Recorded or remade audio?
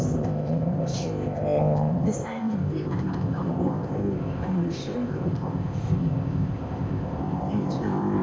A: remade